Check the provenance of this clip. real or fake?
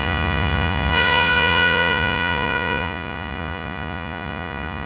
fake